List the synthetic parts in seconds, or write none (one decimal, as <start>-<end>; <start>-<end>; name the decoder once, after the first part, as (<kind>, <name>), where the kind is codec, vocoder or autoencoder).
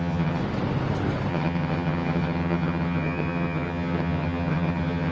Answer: 0.0-0.4 (vocoder, HiFi-GAN); 1.3-5.1